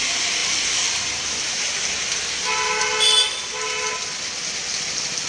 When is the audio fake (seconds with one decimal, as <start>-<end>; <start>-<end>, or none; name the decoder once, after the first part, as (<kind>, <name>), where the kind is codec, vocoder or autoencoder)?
none